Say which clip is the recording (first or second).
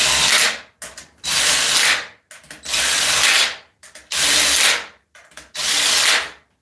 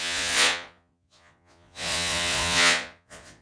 first